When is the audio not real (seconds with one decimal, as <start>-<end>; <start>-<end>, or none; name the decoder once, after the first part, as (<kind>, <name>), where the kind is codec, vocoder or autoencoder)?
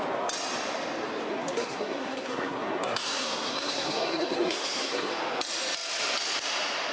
1.3-5.1 (codec, SNAC)